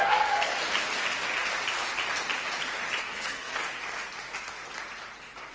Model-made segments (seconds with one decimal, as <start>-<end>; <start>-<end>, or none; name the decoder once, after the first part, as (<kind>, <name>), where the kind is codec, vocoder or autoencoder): 0.0-0.5 (codec, SNAC); 3.0-3.6